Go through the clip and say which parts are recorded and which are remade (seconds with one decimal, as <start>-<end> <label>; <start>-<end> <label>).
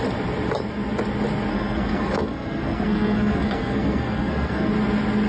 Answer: 0.0-1.5 recorded; 1.5-4.7 remade; 4.7-5.3 recorded